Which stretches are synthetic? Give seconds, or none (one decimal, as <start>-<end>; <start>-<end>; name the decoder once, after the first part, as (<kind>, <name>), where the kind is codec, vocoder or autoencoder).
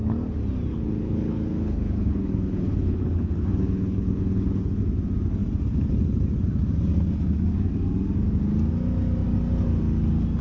0.7-4.7 (codec, HILCodec)